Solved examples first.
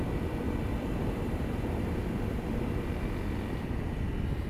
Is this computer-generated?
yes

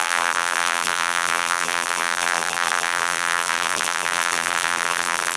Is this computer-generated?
yes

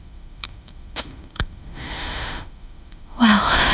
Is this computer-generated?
yes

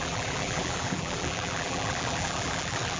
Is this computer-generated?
yes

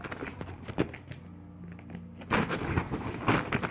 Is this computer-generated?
no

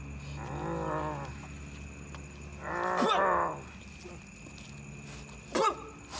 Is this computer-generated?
no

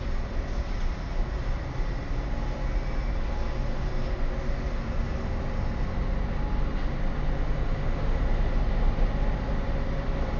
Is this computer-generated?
no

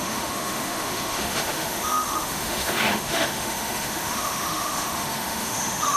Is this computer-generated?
yes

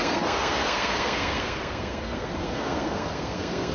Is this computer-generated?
yes